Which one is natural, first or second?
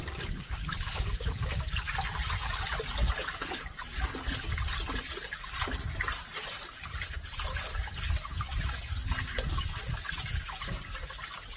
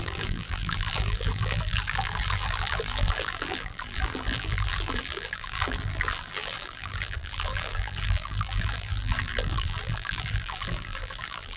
first